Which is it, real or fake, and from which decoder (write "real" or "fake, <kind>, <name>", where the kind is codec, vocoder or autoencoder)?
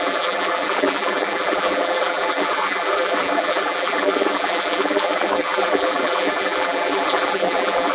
fake, vocoder, BigVGAN v2